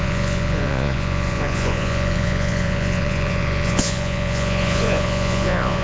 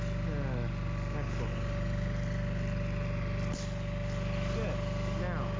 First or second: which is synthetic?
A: first